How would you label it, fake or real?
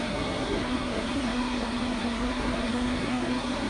fake